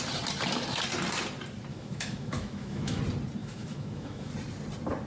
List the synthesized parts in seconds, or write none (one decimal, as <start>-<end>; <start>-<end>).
1.7-3.0; 3.4-4.3